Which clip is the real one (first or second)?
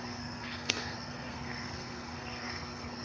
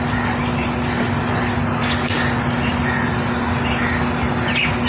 second